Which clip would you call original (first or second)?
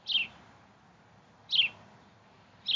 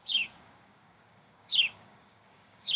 first